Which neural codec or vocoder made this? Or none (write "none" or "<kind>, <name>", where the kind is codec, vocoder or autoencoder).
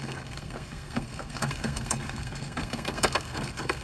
codec, SNAC